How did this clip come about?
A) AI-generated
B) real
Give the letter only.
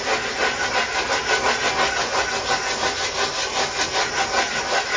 B